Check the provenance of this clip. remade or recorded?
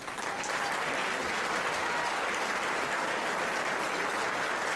recorded